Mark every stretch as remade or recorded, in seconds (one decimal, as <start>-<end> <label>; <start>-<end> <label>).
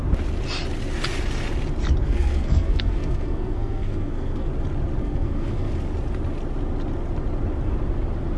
0.0-2.0 recorded; 2.0-4.5 remade; 4.5-5.0 recorded; 5.0-5.7 remade; 5.7-8.4 recorded